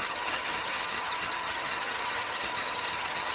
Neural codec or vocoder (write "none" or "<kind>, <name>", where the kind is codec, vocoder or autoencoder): vocoder, HiFi-GAN